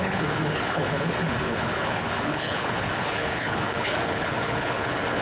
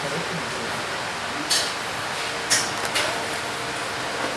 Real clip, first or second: second